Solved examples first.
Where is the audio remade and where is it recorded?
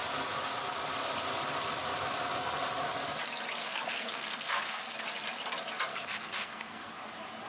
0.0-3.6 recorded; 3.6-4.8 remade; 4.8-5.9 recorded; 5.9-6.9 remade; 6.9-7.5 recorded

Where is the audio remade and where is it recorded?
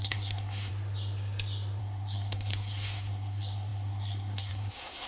0.0-0.7 remade; 0.7-1.8 recorded; 1.8-5.1 remade